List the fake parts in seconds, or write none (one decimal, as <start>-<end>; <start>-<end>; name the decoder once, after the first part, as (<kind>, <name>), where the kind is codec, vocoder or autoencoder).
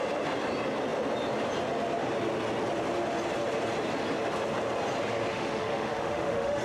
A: 5.3-6.6 (autoencoder, DAC-VAE)